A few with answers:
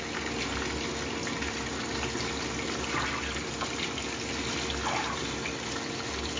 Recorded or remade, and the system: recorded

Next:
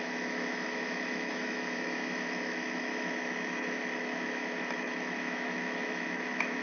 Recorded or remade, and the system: remade, autoencoder, DAC-VAE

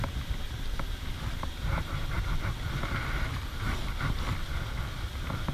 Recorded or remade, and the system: remade, vocoder, BigVGAN v2